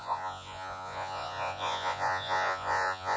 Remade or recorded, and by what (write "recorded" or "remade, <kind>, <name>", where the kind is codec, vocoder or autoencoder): remade, vocoder, Vocos